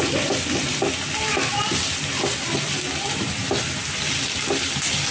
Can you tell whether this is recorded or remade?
recorded